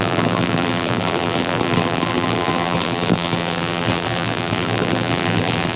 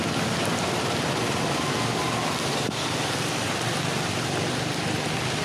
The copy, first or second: first